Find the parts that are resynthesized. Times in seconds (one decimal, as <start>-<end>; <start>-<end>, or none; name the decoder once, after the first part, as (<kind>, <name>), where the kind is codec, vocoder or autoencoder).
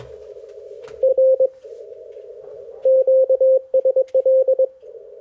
none